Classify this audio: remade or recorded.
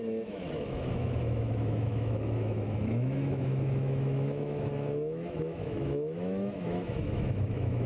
remade